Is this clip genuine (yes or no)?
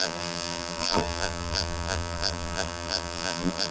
no